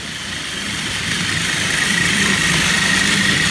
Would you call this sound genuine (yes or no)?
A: no